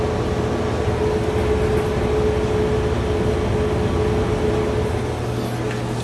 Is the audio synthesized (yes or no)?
no